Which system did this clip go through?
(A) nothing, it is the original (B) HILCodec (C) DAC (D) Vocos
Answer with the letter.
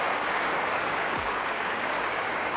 C